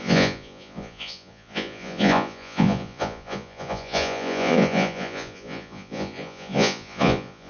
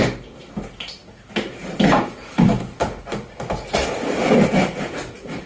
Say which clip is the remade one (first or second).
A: first